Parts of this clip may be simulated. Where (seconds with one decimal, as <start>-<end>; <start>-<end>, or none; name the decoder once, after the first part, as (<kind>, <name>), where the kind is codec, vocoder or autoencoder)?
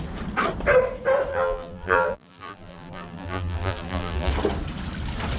1.3-4.3 (vocoder, BigVGAN v2)